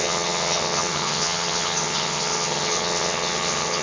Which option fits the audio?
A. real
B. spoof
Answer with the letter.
B